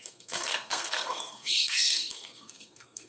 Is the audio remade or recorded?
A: remade